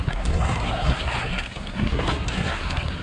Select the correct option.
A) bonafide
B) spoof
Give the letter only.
B